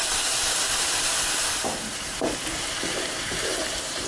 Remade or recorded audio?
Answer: remade